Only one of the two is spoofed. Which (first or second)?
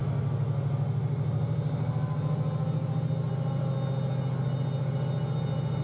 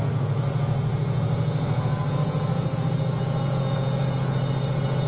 second